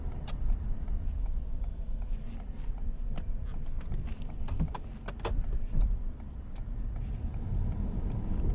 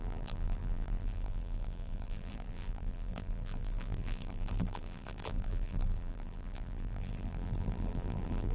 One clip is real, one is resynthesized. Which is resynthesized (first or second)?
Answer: second